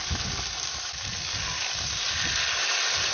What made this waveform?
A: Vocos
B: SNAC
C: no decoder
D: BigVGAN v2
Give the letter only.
C